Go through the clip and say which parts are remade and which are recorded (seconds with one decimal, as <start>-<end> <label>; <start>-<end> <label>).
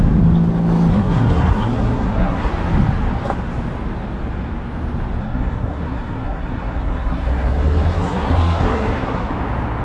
0.0-0.9 recorded; 0.9-2.5 remade; 2.5-5.2 recorded; 5.2-9.3 remade; 9.3-9.8 recorded